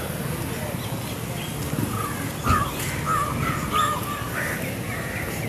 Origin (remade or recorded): recorded